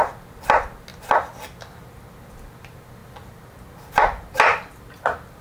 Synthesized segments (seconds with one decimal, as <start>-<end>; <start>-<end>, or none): none